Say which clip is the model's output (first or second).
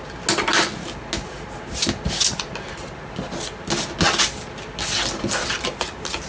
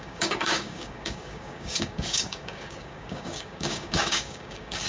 second